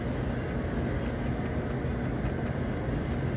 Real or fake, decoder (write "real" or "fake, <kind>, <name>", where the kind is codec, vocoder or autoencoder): real